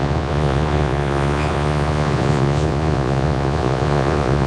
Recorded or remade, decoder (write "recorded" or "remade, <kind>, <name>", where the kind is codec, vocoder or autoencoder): remade, vocoder, Vocos